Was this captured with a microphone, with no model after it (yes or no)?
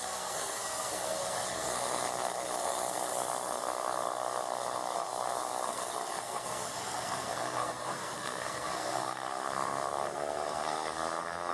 no